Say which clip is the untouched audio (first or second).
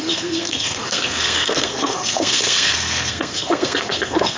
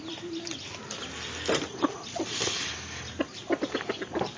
second